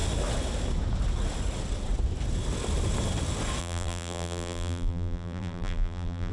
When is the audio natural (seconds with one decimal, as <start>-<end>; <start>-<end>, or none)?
0.0-3.6